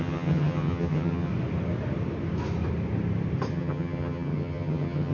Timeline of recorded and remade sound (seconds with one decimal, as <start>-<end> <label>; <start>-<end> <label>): 0.0-1.3 remade; 1.3-3.5 recorded; 3.5-5.1 remade